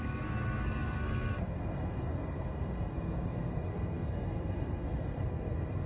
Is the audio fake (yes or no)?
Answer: yes